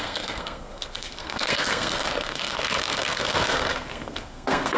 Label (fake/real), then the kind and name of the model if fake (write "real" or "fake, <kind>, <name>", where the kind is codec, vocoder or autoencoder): fake, codec, SNAC